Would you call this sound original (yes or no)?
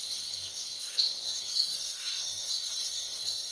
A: no